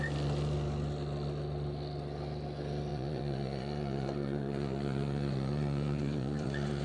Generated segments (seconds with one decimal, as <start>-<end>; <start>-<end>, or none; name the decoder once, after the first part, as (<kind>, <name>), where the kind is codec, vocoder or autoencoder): 2.9-6.8 (vocoder, Vocos)